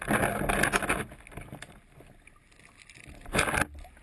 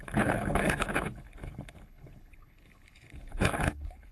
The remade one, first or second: second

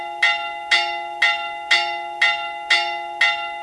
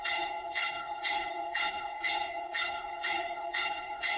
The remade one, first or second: second